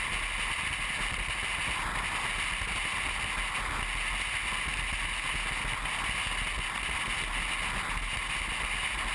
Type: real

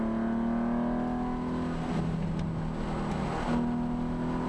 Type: real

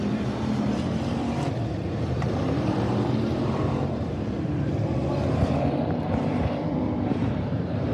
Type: fake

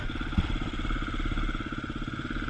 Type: real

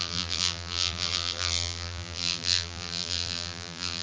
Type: fake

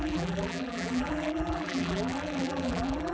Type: fake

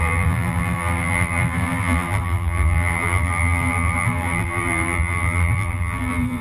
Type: fake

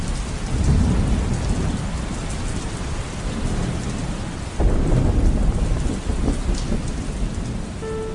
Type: real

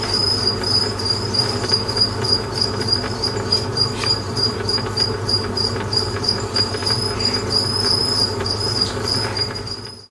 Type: fake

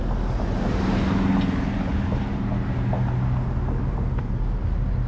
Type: real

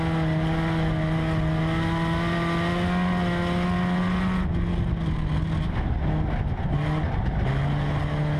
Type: real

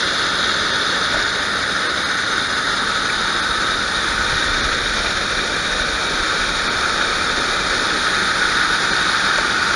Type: real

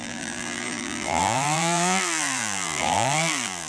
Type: fake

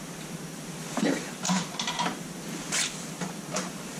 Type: real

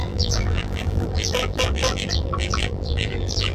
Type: fake